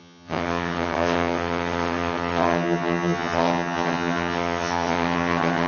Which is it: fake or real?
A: fake